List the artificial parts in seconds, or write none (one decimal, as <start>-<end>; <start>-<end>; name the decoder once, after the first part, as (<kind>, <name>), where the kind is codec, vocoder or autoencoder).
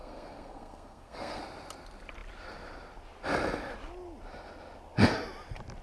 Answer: 0.0-1.4 (codec, SNAC)